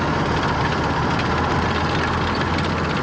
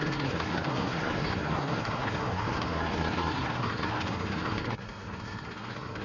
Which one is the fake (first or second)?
second